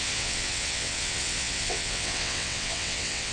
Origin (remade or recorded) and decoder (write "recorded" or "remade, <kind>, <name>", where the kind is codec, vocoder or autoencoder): remade, vocoder, WaveNeXt